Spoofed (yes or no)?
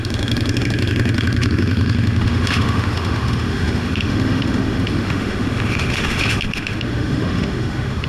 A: yes